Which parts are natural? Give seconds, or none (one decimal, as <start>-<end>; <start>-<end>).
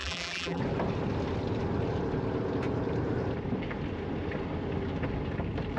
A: 0.6-5.8